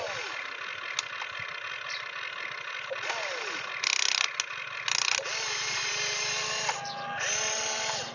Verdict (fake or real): real